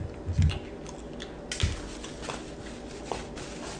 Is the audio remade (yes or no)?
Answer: no